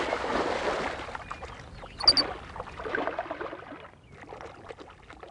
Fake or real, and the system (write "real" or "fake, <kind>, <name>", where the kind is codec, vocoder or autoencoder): real